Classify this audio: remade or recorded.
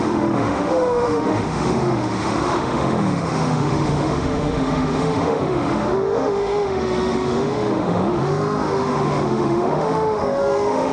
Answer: remade